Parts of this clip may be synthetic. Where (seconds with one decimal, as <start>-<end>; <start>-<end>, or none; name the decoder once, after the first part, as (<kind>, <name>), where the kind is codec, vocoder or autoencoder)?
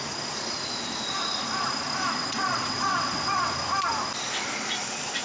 2.2-3.5 (vocoder, WaveNeXt)